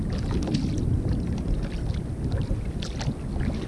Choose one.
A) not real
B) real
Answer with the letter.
B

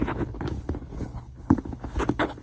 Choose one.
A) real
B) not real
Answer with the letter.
B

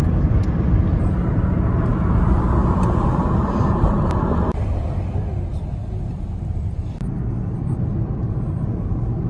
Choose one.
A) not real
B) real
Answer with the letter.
B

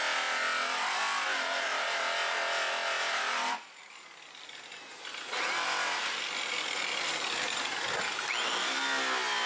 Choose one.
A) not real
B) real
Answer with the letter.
B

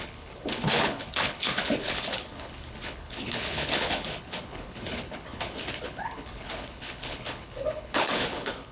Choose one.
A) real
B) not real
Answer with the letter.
B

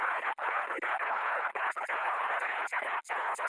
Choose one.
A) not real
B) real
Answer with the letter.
A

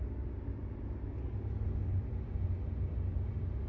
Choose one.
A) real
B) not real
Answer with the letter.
A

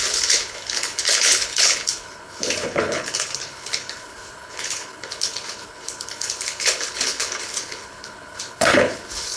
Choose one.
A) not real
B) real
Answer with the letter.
A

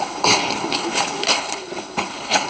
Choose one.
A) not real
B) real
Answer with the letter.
A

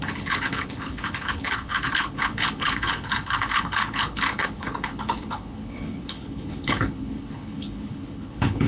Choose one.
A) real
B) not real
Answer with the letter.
B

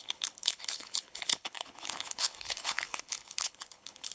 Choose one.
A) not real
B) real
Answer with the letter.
A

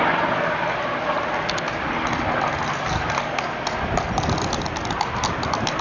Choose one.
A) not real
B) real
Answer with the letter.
B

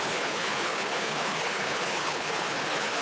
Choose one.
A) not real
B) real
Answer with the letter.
A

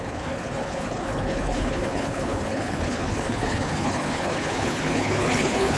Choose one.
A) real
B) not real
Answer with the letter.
B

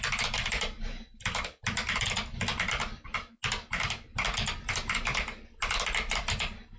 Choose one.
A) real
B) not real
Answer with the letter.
A